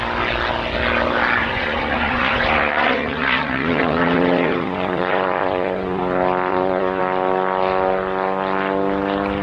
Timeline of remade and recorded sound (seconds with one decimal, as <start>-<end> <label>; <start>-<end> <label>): 0.0-1.4 recorded; 1.4-6.0 remade; 6.0-6.5 recorded; 6.5-7.0 remade; 7.0-9.4 recorded